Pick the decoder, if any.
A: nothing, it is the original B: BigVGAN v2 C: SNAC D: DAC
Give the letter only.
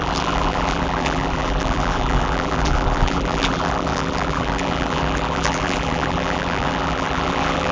B